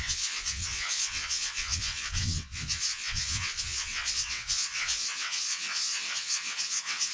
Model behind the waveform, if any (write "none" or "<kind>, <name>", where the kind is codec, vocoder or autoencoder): vocoder, WaveNeXt